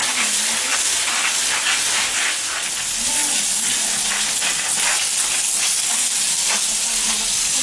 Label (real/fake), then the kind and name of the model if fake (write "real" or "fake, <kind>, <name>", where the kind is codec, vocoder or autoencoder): real